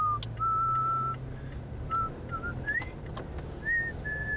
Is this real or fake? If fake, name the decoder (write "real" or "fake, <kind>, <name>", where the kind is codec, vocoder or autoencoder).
real